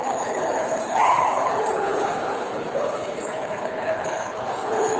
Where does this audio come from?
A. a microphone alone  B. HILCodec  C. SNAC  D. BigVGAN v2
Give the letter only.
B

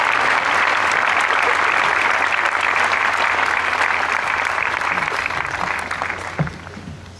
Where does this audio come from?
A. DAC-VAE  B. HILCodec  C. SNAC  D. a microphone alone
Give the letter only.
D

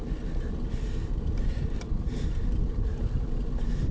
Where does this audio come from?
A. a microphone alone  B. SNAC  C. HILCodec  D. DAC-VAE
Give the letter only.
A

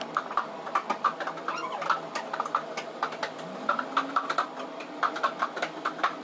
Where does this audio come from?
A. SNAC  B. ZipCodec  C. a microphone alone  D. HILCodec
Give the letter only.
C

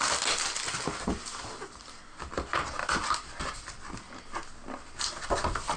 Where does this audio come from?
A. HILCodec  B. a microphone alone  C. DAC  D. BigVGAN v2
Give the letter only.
B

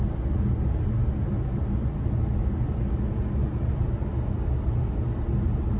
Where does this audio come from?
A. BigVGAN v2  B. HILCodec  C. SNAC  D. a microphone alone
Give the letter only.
D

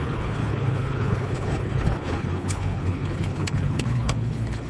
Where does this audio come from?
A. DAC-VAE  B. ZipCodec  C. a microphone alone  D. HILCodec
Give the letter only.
D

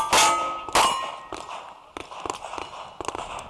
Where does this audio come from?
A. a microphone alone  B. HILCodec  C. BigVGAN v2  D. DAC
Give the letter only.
A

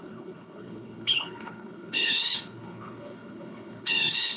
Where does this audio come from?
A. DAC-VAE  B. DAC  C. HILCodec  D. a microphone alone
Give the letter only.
C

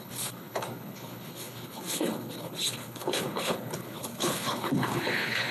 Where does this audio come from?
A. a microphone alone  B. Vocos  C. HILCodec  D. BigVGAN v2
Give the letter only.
C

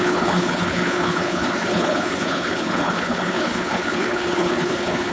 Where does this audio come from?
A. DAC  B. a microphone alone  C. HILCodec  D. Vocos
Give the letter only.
C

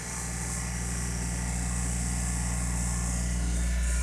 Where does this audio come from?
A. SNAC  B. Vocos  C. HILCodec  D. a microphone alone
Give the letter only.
D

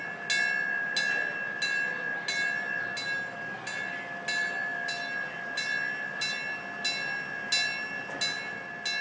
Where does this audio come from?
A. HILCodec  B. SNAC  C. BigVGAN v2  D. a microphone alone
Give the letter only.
D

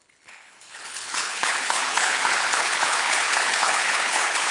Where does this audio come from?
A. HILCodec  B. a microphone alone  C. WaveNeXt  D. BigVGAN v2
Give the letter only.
A